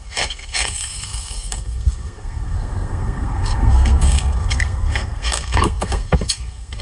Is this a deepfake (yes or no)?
yes